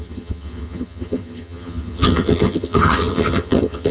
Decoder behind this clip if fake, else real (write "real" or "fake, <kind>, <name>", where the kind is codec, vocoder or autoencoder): fake, vocoder, HiFi-GAN